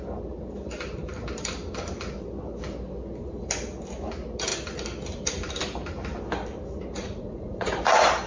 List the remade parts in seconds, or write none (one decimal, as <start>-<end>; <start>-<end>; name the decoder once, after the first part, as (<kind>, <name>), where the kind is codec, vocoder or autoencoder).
7.0-7.8 (vocoder, Vocos)